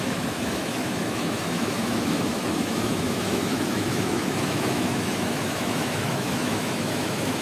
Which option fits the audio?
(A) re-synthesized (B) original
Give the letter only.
A